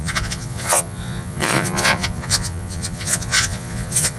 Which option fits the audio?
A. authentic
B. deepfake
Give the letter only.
B